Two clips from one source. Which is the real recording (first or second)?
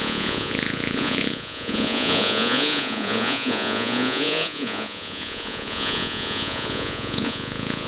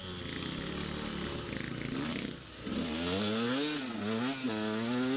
second